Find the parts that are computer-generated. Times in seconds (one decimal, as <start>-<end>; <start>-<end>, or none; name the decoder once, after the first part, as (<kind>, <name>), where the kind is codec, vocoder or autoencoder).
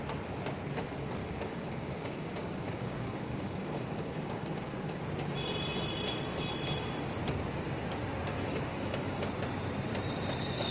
1.2-5.0 (codec, DAC); 8.3-9.3